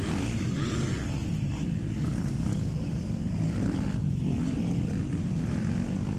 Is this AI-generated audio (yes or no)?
no